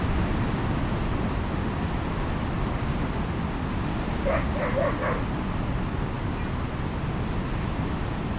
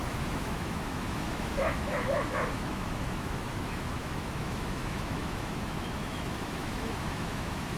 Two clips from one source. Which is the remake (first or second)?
second